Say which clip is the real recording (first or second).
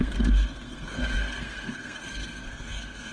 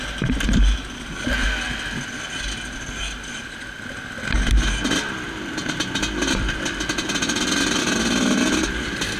second